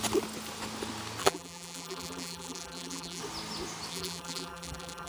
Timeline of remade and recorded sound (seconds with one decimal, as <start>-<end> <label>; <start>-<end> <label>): 0.0-1.2 recorded; 1.2-3.2 remade; 3.2-3.9 recorded; 3.9-5.1 remade